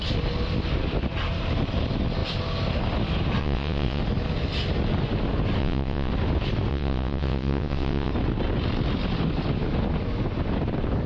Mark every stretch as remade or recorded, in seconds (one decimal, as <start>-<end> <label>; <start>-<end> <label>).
0.0-3.4 recorded; 3.4-4.0 remade; 4.0-5.6 recorded; 5.6-6.1 remade; 6.1-6.7 recorded; 6.7-8.1 remade; 8.1-11.1 recorded